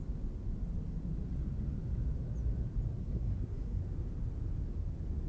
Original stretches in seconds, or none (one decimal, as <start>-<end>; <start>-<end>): 0.0-3.0; 3.8-5.3